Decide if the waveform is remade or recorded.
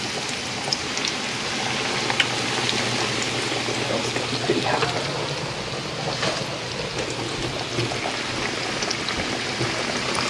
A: recorded